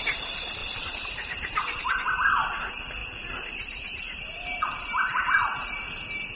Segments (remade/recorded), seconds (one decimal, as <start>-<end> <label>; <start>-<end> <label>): 0.0-0.6 recorded; 0.6-1.8 remade; 1.8-6.4 recorded